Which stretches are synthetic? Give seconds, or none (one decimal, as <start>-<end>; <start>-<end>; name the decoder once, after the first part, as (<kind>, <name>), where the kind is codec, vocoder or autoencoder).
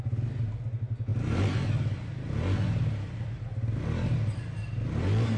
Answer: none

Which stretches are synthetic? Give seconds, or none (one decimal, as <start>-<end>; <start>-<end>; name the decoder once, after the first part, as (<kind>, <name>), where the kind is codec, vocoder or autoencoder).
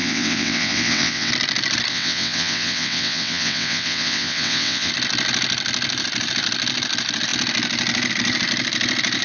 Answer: 0.0-1.3 (vocoder, WaveNeXt); 1.9-4.9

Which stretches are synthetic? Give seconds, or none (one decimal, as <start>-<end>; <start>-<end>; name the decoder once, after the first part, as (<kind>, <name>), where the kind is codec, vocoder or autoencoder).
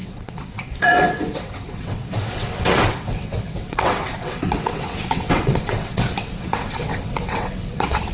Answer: 0.0-8.1 (vocoder, WaveNeXt)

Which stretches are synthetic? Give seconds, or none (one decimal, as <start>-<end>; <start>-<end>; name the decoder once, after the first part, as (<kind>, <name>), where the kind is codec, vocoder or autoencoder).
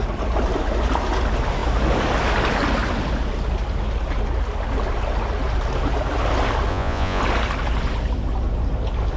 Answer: 6.7-7.2 (vocoder, Vocos)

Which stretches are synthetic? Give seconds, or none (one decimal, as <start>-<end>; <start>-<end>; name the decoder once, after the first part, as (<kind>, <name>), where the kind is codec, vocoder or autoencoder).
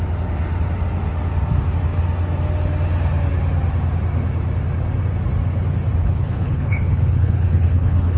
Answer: 6.0-8.2 (codec, HILCodec)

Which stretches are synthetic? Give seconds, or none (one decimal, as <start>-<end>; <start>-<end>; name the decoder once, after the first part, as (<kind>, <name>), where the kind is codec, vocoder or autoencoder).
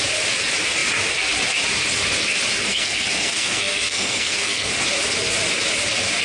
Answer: 2.7-4.7 (codec, SNAC)